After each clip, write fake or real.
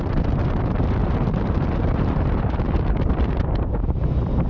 fake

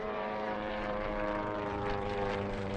fake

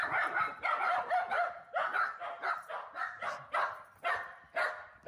real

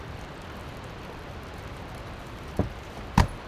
fake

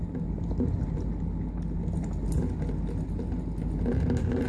real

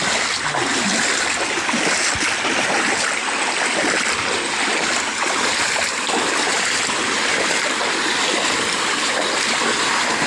real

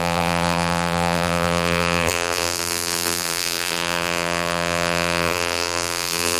fake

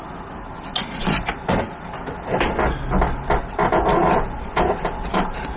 real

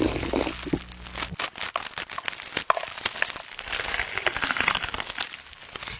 real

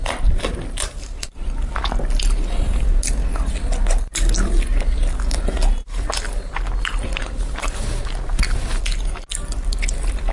real